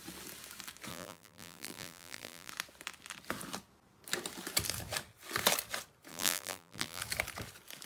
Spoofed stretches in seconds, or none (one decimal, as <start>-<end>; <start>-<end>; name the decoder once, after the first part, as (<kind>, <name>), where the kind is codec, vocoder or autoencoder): 0.9-2.5 (vocoder, BigVGAN v2); 6.1-7.0